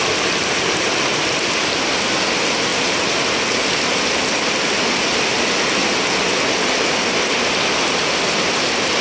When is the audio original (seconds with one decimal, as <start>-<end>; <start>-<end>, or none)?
0.0-9.0